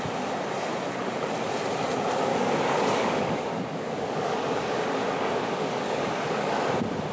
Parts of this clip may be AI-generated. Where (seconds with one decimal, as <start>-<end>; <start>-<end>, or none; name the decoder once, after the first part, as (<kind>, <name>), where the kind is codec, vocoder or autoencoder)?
2.3-6.6 (codec, DAC)